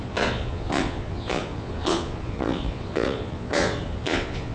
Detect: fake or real fake